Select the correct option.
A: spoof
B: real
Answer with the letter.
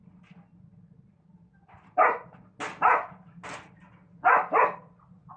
B